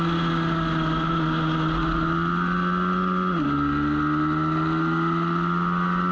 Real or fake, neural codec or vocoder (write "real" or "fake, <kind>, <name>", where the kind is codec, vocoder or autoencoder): real